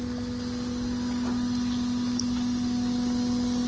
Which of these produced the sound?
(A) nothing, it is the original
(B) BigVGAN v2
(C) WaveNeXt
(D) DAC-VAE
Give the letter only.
A